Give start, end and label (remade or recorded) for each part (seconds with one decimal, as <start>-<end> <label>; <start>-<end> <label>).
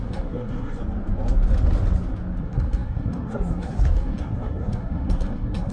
0.0-0.8 remade; 0.8-2.4 recorded; 2.4-5.7 remade